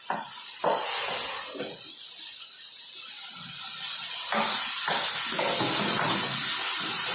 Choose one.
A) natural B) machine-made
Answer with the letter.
A